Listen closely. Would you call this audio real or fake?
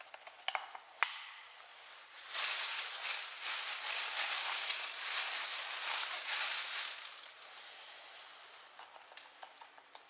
real